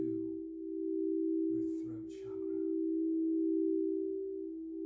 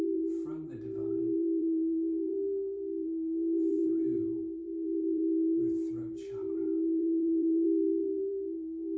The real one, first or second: first